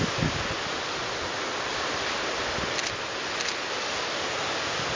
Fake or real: real